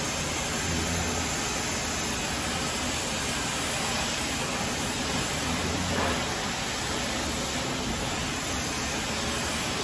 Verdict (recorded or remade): recorded